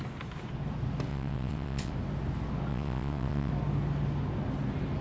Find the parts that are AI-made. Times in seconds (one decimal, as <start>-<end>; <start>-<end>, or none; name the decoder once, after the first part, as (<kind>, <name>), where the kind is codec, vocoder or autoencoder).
1.1-1.9 (vocoder, WaveNeXt); 2.7-3.5